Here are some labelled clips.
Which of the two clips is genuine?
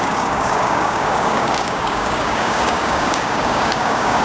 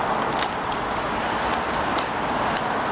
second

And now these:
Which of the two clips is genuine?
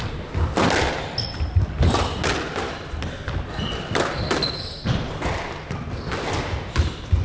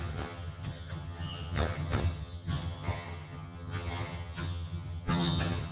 first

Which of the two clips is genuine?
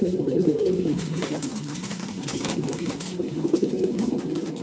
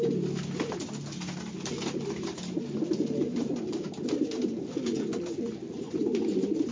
second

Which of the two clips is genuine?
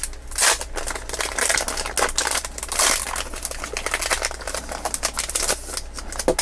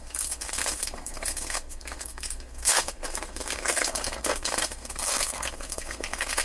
first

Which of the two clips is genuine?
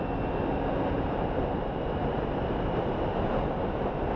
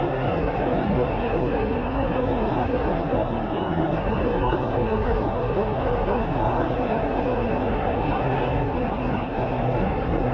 first